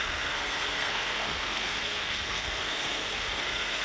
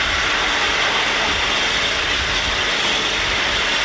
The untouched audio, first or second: second